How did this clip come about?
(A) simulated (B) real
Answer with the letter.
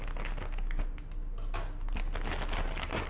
B